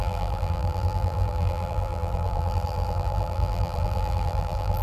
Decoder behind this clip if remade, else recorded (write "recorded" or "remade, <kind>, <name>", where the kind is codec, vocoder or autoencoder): remade, vocoder, BigVGAN v2